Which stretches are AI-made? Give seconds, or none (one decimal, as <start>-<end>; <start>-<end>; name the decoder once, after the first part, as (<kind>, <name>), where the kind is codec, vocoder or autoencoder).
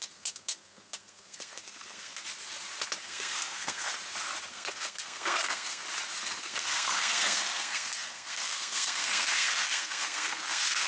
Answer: 0.0-2.2 (codec, SNAC); 3.0-3.9; 4.5-5.8; 6.4-10.9